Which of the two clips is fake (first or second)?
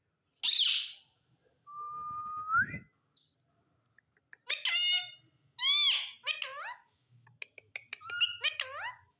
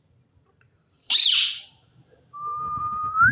second